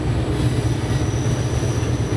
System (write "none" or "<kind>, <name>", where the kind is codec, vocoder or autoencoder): none